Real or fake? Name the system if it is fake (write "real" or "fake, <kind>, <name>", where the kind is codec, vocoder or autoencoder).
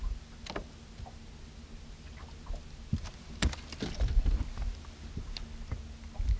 real